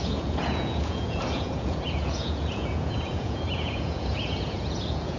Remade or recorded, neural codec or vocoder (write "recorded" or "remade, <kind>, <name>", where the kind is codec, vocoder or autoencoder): remade, vocoder, Vocos